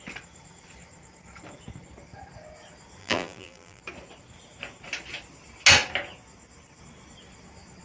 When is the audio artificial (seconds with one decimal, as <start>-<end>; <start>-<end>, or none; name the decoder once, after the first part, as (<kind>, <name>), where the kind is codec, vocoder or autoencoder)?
3.0-3.8 (vocoder, BigVGAN v2)